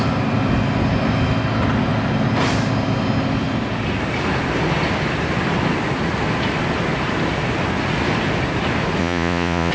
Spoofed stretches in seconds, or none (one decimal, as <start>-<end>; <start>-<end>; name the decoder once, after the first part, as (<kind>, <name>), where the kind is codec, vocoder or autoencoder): 9.0-9.7 (vocoder, Vocos)